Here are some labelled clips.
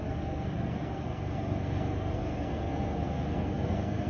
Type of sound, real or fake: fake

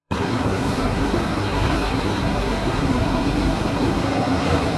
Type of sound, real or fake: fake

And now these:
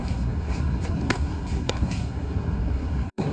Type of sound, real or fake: fake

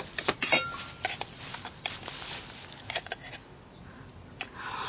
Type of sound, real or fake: real